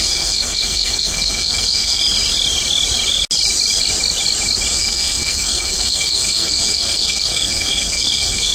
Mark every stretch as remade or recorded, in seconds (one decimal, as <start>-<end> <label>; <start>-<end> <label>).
0.0-2.0 remade; 2.0-4.7 recorded; 4.7-8.5 remade